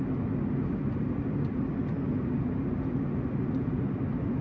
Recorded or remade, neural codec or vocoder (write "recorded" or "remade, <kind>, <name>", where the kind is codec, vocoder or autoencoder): recorded